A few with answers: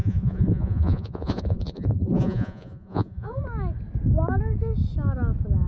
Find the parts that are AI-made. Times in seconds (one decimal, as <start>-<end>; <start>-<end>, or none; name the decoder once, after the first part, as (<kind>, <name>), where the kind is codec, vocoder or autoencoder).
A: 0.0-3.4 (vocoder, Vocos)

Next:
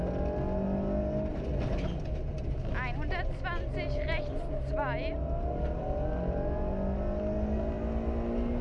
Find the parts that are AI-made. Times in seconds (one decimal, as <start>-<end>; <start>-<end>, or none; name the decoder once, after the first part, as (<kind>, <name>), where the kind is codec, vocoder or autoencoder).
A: none

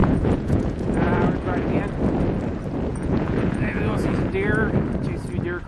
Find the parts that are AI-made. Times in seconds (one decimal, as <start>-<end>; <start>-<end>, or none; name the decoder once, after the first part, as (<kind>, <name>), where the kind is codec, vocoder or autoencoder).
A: 0.0-1.8 (vocoder, Vocos); 2.9-4.3